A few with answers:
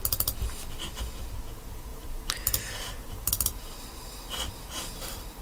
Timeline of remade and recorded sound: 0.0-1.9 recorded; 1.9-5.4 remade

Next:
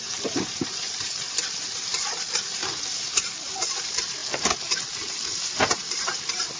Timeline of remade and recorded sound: 0.0-2.6 remade; 2.6-3.8 recorded; 3.8-6.6 remade

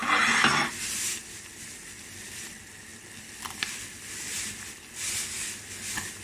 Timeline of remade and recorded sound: 0.0-6.2 recorded